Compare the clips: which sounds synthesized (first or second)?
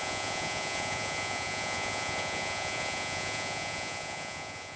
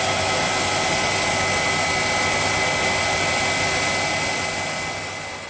first